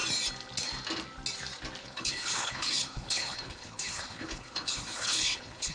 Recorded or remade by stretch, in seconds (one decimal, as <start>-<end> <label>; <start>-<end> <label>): 0.0-1.8 recorded; 1.8-5.7 remade